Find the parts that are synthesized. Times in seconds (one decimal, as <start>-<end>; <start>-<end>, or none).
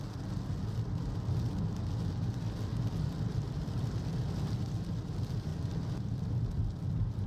5.5-6.2